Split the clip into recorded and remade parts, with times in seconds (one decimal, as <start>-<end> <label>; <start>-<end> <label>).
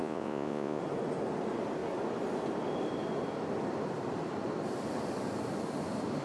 0.0-0.8 remade; 0.8-6.2 recorded